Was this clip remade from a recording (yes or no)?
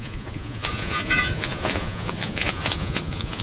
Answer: yes